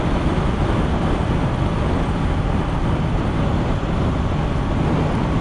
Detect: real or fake real